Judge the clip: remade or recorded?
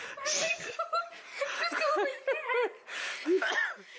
recorded